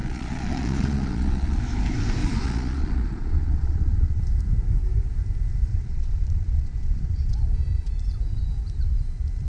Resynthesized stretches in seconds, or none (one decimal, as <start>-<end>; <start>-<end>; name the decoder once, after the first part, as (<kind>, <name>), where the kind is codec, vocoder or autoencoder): 0.0-1.6 (vocoder, Vocos); 2.2-4.2; 5.7-7.3